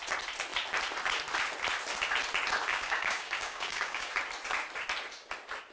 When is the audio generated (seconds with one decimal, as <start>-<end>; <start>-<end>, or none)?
2.7-4.1